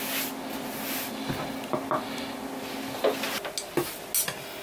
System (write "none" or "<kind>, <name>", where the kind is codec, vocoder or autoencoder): none